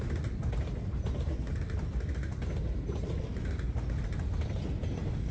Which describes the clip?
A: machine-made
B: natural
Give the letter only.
B